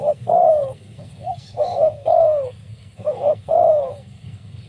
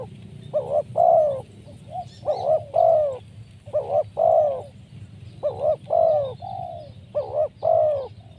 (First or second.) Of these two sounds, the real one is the second